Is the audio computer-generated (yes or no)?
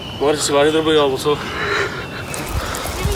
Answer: no